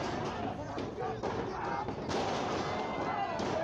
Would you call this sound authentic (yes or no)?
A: yes